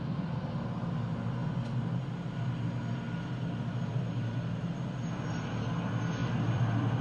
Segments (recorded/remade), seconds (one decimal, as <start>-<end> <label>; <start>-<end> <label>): 0.0-6.2 recorded; 6.2-7.0 remade